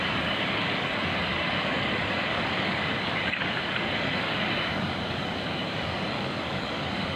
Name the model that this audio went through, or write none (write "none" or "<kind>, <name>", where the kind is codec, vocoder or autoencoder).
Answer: codec, DAC